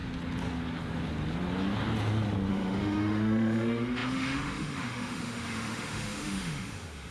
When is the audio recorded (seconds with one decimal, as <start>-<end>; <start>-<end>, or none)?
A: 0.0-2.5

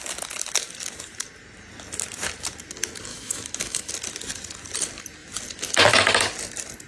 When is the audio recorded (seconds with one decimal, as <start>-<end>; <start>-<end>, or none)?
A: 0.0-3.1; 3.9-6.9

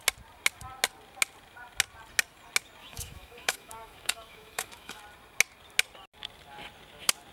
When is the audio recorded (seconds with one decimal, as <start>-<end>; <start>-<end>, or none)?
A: 0.0-2.8; 5.0-7.3